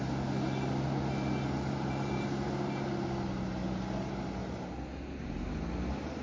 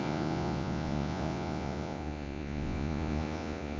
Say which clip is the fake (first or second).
second